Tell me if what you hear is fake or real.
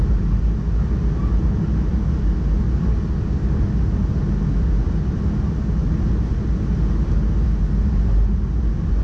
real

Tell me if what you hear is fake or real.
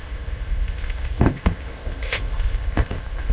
fake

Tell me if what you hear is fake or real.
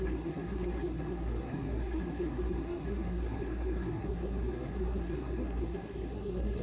fake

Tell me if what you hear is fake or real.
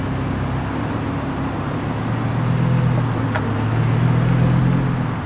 real